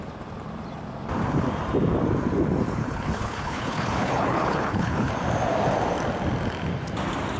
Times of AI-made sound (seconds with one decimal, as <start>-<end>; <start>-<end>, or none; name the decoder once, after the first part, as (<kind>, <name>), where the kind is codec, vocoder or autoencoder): 2.8-5.1 (codec, HILCodec)